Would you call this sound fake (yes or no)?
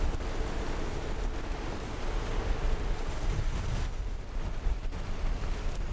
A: no